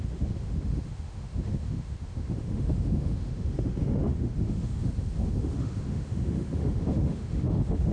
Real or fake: fake